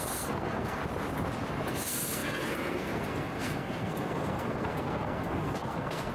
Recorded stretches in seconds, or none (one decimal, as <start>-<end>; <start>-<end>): 0.8-1.7